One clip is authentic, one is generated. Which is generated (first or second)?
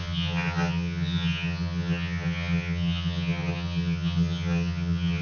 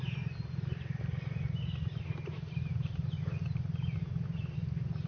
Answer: first